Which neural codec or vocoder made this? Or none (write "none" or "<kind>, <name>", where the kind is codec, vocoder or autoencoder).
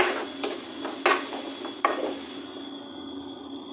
none